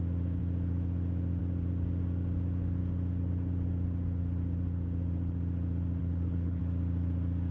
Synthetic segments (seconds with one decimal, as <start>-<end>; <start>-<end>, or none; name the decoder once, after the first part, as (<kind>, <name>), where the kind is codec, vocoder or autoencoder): 6.0-6.6 (codec, HILCodec)